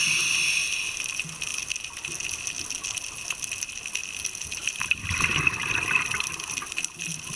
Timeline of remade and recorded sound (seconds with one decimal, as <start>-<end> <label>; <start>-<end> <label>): 0.0-7.4 recorded